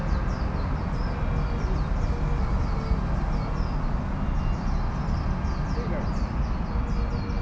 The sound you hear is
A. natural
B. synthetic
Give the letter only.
A